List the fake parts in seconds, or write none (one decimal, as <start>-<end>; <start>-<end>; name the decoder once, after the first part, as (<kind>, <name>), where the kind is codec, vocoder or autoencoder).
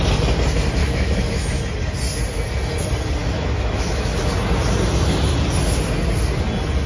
0.8-1.6 (autoencoder, DAC-VAE); 3.2-4.3